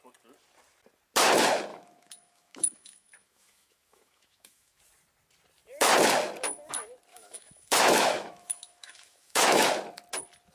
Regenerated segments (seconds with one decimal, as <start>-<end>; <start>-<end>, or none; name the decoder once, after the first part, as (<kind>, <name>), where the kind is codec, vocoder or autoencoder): 1.7-4.8 (autoencoder, DAC-VAE); 7.1-9.7